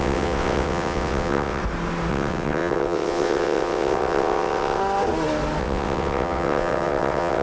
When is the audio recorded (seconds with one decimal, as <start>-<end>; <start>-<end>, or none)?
1.6-2.1; 4.8-5.6